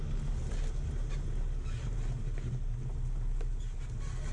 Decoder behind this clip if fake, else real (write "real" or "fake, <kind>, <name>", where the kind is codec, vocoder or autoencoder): real